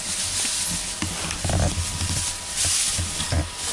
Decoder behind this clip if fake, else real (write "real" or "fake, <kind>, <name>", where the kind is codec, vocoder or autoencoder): real